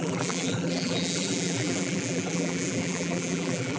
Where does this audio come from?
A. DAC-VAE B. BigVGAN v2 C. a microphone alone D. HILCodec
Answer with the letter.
B